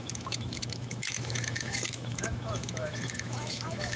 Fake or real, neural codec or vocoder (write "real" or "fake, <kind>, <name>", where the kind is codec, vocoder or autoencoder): fake, autoencoder, DAC-VAE